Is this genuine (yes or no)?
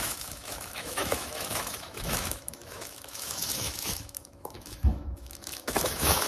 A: no